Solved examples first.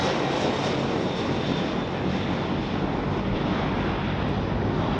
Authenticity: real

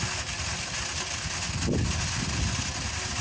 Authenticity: real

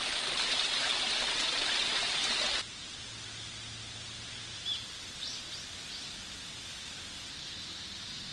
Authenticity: real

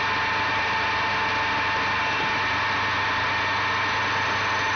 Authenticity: real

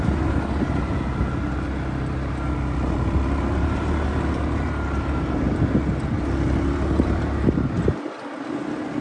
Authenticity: real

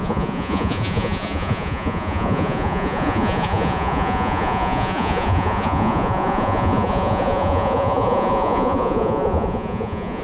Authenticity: fake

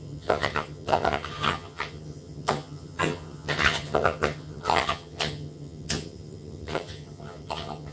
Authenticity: fake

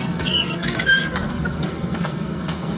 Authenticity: fake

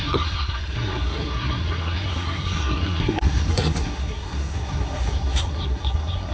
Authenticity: fake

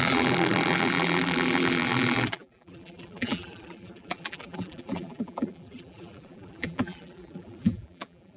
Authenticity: fake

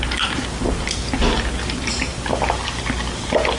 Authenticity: real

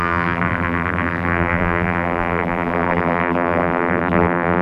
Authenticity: fake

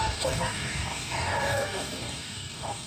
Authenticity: fake